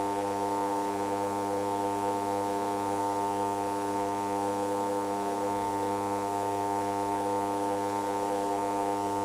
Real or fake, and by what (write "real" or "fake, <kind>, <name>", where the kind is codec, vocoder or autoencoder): fake, codec, SNAC